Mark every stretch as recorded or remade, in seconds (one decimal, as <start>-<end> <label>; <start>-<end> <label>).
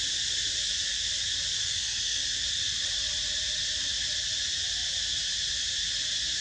0.0-1.6 recorded; 1.6-2.2 remade; 2.2-6.4 recorded